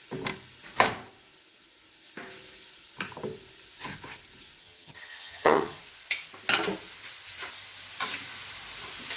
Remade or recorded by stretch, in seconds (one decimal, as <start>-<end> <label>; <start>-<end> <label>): 0.0-4.6 recorded; 4.6-5.8 remade; 5.8-9.2 recorded